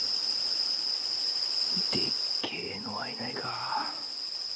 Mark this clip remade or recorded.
recorded